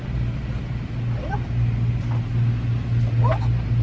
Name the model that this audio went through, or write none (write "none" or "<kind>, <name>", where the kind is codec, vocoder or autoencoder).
none